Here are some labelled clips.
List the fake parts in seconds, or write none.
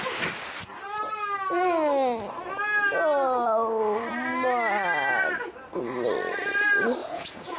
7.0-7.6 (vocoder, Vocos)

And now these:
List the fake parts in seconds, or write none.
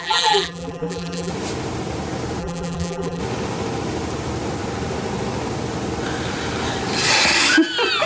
0.0-1.3 (vocoder, BigVGAN v2); 2.4-3.2